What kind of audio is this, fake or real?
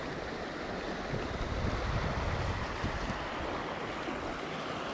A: real